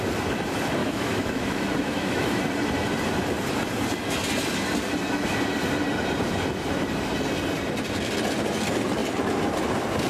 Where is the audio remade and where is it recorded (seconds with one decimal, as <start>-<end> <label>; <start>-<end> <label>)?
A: 0.0-0.8 recorded; 0.8-2.4 remade; 2.4-10.1 recorded